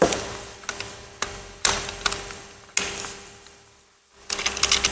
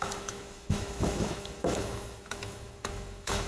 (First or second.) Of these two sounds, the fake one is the second